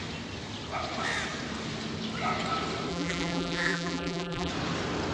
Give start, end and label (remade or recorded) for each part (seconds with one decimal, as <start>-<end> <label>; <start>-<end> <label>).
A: 0.0-2.9 recorded; 2.9-4.5 remade; 4.5-5.1 recorded